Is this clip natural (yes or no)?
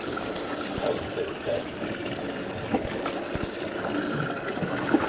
yes